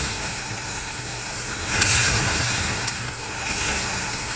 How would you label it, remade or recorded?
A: remade